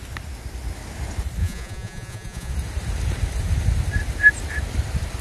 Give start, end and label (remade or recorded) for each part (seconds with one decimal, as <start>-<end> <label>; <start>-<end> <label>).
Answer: 0.0-1.4 recorded; 1.4-2.5 remade; 2.5-5.2 recorded